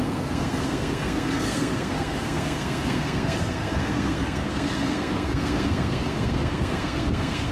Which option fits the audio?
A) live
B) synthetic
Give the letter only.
B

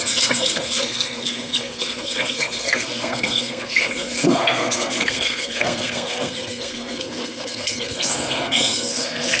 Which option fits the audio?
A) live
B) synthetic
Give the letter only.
B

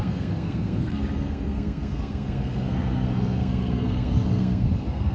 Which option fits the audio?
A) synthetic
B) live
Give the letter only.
A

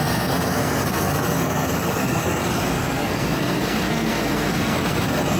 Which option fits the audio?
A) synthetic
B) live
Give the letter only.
A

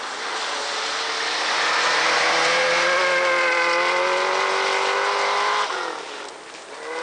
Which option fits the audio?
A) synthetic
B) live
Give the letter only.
B